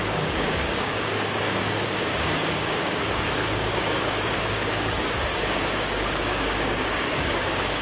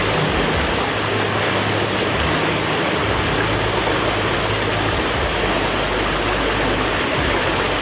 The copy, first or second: first